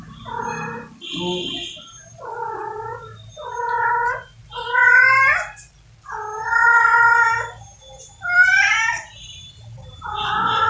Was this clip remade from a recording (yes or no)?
no